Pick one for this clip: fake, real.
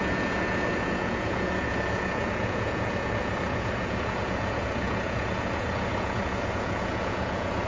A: fake